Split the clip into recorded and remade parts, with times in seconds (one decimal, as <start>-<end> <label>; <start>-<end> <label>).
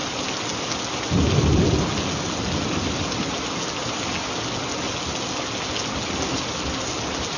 0.0-7.4 recorded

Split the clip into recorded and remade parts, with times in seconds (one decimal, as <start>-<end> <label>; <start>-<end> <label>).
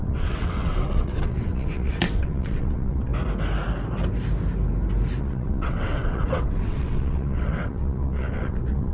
0.0-3.1 remade; 3.1-5.2 recorded; 5.2-8.9 remade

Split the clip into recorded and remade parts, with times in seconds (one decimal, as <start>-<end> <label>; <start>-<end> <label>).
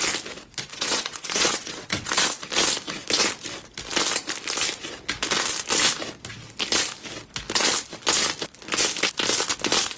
0.0-0.7 recorded; 0.7-2.1 remade; 2.1-10.0 recorded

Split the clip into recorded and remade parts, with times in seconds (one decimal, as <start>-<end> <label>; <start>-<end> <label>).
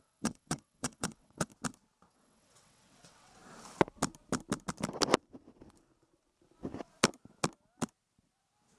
0.0-1.5 remade; 1.5-2.1 recorded; 2.1-3.4 remade; 3.4-8.8 recorded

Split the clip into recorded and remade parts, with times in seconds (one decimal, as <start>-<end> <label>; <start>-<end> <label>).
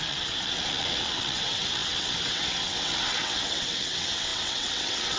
0.0-5.2 remade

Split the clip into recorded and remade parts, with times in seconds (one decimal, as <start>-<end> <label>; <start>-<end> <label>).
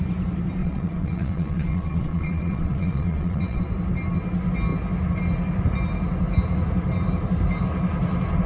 0.0-0.6 recorded; 0.6-3.6 remade; 3.6-8.5 recorded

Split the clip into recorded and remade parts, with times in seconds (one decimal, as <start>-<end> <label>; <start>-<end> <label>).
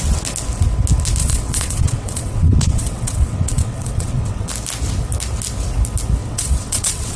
0.0-1.2 recorded; 1.2-4.5 remade; 4.5-6.2 recorded; 6.2-7.2 remade